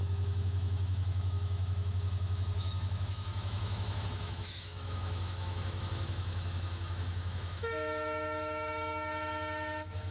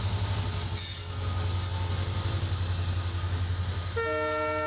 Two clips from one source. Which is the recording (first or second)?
second